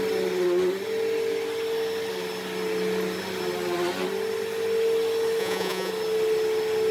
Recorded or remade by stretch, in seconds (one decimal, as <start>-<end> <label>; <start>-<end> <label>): 0.0-5.4 recorded; 5.4-5.9 remade; 5.9-6.9 recorded